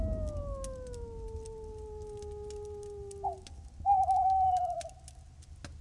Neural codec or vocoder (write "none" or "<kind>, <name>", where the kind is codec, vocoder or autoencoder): none